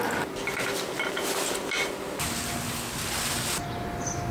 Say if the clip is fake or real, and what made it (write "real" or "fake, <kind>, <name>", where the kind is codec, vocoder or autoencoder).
real